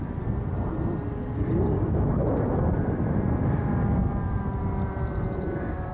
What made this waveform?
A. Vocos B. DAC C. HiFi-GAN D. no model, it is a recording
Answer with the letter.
D